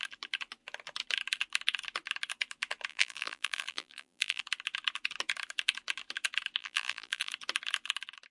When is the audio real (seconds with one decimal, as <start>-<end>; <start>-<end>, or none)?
0.0-2.9; 4.4-6.6; 7.3-8.3